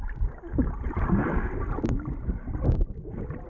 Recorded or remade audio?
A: recorded